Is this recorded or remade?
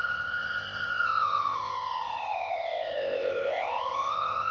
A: remade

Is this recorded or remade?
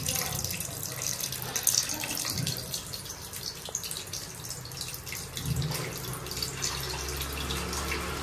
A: recorded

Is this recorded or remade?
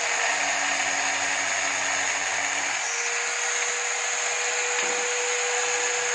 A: recorded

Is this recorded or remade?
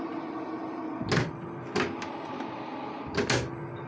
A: recorded